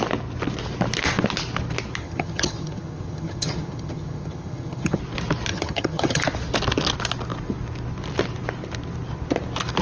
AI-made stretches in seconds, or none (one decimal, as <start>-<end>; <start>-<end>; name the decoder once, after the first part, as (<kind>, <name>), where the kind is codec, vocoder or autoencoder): 2.0-5.0 (vocoder, HiFi-GAN); 5.5-6.2